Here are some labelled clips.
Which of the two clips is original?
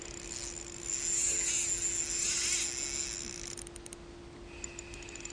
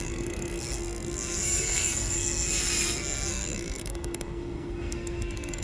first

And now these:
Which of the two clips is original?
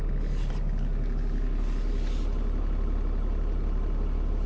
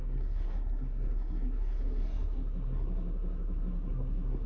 first